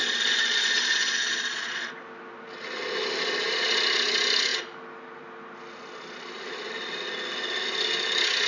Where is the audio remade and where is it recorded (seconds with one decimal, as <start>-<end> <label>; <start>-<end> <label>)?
0.0-1.9 remade; 1.9-8.5 recorded